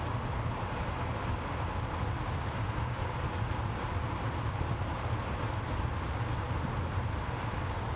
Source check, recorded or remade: recorded